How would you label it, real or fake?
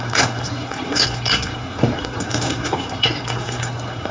fake